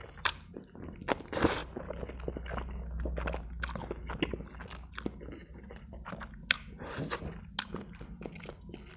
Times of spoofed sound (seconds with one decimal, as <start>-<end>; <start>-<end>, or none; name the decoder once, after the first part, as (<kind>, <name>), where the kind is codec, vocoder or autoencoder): 0.0-0.8 (vocoder, BigVGAN v2); 5.4-6.3